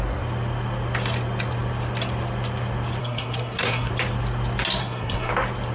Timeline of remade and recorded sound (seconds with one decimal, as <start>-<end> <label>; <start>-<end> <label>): 0.0-3.0 recorded; 3.0-3.9 remade; 3.9-4.8 recorded; 4.8-5.3 remade; 5.3-5.7 recorded